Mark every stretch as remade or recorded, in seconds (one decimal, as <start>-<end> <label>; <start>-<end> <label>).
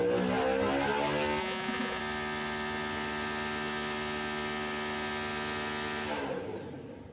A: 0.0-1.4 recorded; 1.4-2.0 remade; 2.0-7.1 recorded